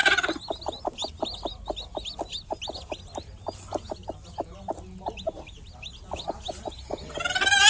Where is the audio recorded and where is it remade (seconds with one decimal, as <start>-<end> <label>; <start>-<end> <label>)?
0.0-7.7 recorded